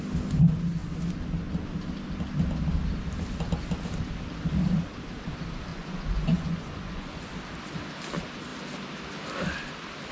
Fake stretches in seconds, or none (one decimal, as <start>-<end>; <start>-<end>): 5.7-7.3